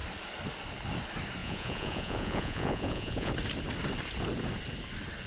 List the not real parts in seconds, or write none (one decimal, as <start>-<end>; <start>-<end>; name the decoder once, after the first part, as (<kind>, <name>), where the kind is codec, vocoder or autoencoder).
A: 1.4-3.3 (vocoder, Vocos)